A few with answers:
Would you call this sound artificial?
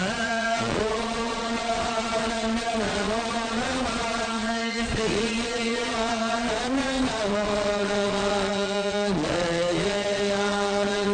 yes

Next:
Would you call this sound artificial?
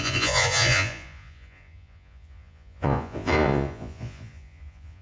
yes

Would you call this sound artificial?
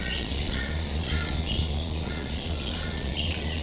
yes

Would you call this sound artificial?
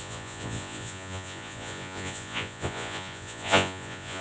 yes